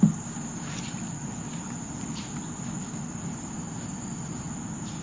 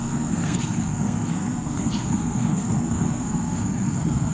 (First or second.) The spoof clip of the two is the second